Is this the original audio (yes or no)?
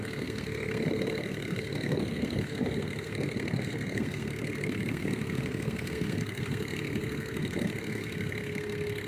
no